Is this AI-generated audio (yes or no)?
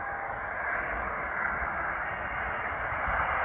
no